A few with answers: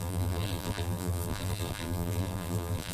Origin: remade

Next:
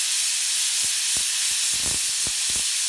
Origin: recorded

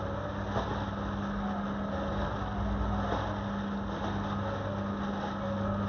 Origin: recorded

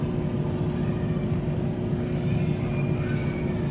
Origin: recorded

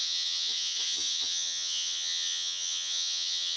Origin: remade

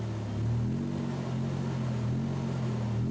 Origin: recorded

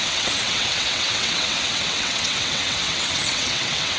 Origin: remade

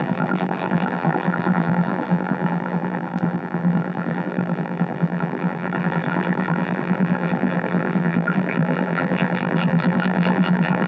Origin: remade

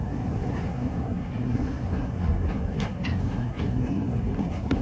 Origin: remade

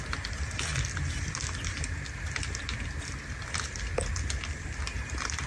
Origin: recorded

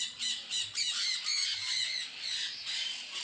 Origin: recorded